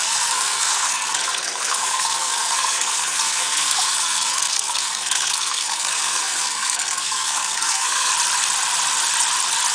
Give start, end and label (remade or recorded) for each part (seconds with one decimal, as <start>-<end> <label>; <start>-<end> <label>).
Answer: 0.0-8.1 remade; 8.1-9.7 recorded